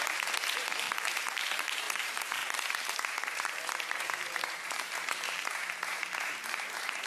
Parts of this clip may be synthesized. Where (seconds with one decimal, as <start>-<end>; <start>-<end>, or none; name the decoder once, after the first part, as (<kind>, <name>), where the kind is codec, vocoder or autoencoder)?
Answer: 0.0-7.1 (vocoder, BigVGAN v2)